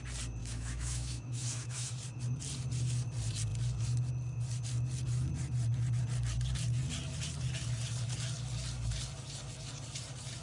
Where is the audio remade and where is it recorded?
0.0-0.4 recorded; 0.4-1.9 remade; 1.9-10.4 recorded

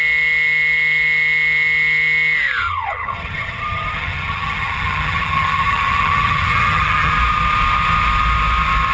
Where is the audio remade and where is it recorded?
0.0-2.6 recorded; 2.6-7.1 remade; 7.1-8.9 recorded

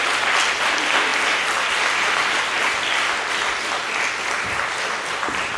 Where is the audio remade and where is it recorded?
0.0-5.6 recorded

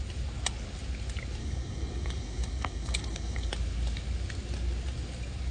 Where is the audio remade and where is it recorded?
0.0-1.4 recorded; 1.4-3.5 remade; 3.5-5.5 recorded

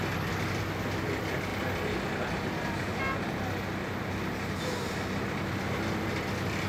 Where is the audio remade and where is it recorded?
0.0-6.7 recorded

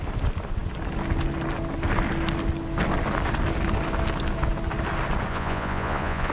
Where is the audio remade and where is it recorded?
0.0-5.3 recorded; 5.3-6.3 remade